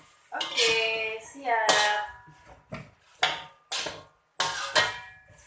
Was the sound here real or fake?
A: real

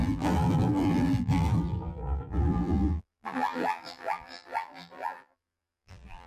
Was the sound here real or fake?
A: fake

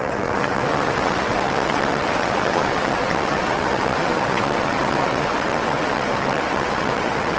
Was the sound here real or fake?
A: fake